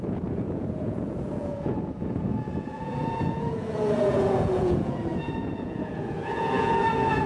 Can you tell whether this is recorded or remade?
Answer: remade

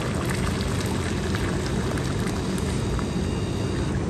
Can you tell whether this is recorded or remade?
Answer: recorded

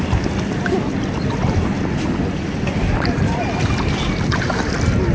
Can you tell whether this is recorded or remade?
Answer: recorded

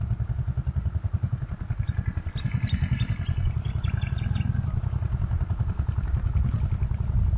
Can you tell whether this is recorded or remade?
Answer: recorded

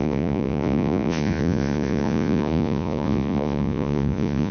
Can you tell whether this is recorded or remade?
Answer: remade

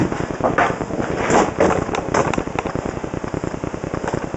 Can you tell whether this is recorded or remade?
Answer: recorded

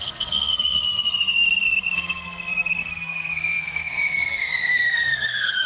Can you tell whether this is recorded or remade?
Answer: remade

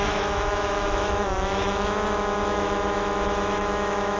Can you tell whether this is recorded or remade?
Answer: remade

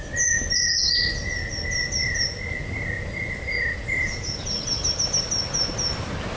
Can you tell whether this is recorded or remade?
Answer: recorded